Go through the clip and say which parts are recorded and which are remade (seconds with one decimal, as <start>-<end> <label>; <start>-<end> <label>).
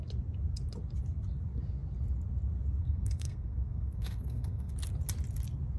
0.0-2.8 recorded; 2.8-4.7 remade; 4.7-5.8 recorded